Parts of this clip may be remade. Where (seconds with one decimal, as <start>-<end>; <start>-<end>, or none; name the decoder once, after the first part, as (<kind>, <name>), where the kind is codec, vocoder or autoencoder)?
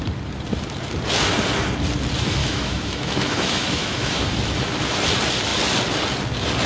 2.4-4.2 (autoencoder, DAC-VAE)